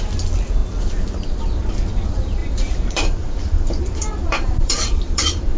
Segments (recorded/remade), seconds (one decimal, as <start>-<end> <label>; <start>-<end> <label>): 0.0-2.4 recorded; 2.4-5.6 remade